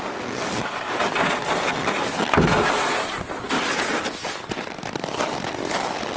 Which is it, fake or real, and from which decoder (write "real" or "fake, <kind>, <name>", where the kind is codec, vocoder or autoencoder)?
real